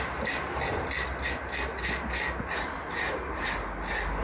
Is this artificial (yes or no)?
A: no